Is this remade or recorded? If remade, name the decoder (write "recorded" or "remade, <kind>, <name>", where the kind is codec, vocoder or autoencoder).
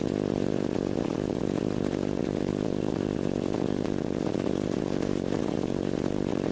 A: remade, vocoder, BigVGAN v2